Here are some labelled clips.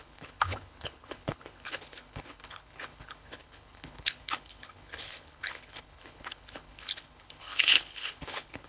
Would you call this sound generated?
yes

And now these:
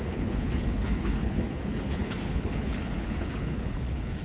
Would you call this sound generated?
yes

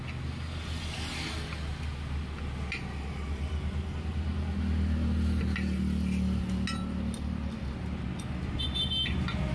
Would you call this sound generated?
no